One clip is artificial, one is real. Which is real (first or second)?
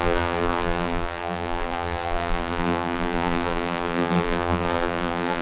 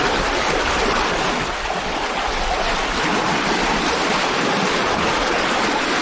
second